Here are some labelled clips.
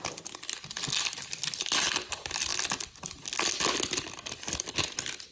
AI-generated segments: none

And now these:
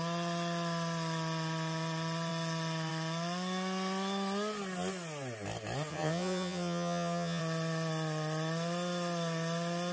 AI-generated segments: 5.9-7.4 (vocoder, HiFi-GAN)

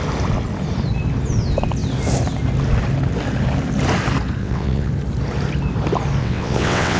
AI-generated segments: 4.4-4.9 (vocoder, WaveNeXt); 6.2-7.0